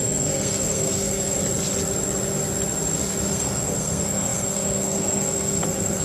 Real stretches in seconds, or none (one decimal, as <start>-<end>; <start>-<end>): 1.4-3.3